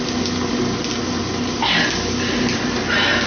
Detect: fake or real real